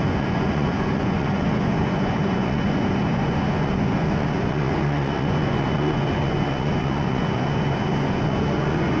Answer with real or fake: fake